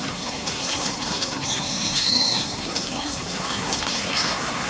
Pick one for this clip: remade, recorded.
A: remade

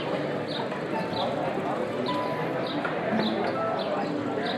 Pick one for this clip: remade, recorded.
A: recorded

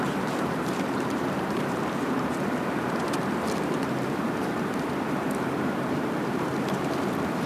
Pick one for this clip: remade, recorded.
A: remade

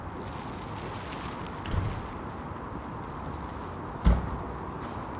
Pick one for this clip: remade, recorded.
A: recorded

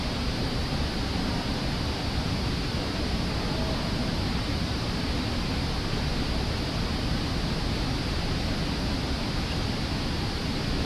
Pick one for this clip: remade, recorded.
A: recorded